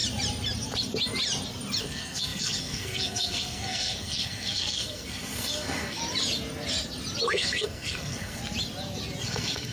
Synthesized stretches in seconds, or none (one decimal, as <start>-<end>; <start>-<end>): 1.8-6.0; 7.3-8.4; 9.2-9.7